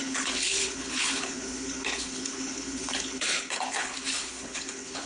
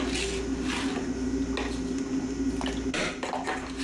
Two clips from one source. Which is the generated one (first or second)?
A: first